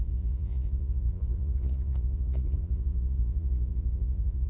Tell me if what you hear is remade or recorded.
remade